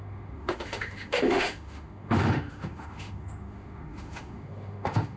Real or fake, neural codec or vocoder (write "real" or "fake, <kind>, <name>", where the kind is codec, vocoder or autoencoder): fake, autoencoder, DAC-VAE